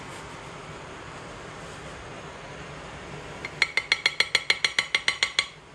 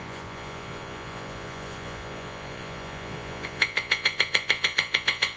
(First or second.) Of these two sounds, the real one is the first